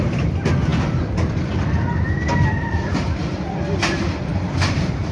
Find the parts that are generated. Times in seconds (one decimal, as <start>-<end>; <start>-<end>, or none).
4.3-5.1